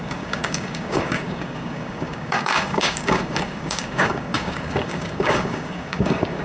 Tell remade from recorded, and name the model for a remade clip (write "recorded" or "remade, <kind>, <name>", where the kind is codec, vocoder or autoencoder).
remade, codec, DAC